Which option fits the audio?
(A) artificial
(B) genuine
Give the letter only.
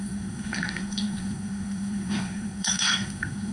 A